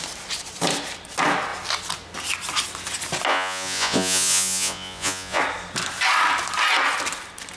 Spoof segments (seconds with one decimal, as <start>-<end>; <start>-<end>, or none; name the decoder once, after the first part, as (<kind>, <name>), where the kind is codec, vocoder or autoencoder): 3.3-5.4 (vocoder, Vocos)